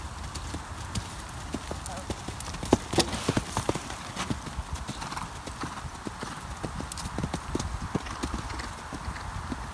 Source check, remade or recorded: recorded